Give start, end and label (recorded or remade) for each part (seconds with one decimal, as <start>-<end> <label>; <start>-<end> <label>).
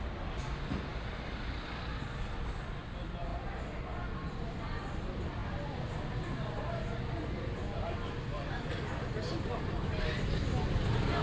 0.0-11.2 recorded